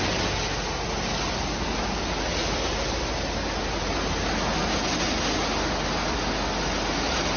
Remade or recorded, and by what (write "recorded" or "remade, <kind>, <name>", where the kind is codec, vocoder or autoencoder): recorded